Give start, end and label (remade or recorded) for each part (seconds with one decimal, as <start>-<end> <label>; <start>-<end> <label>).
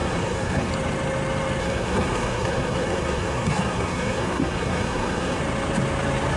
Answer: 0.0-0.7 remade; 0.7-1.6 recorded; 1.6-5.4 remade; 5.4-6.4 recorded